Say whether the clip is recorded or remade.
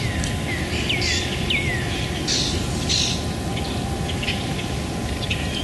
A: recorded